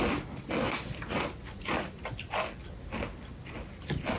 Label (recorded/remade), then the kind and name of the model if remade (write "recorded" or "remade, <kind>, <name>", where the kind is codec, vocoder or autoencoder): recorded